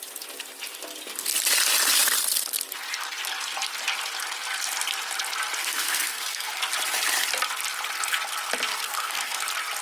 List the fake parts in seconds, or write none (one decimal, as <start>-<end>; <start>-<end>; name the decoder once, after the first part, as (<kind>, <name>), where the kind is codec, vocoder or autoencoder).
5.6-6.5 (codec, SNAC); 8.7-9.4